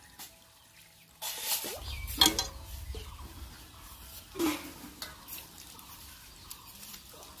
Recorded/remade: recorded